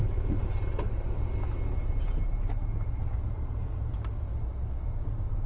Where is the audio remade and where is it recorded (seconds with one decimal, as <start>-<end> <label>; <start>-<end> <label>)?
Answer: 0.0-3.0 recorded; 3.0-5.5 remade